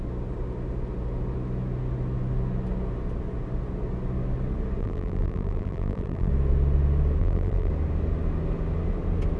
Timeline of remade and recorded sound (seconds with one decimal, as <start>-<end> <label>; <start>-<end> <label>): 0.0-4.8 recorded; 4.8-6.3 remade; 6.3-7.2 recorded; 7.2-7.7 remade; 7.7-9.4 recorded